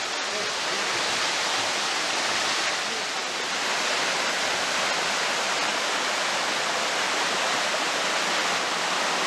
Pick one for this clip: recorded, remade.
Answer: recorded